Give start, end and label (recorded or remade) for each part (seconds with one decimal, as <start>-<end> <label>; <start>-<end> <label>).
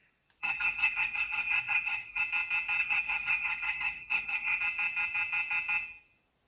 0.0-0.4 recorded; 0.4-2.2 remade; 2.2-2.8 recorded; 2.8-4.6 remade; 4.6-6.5 recorded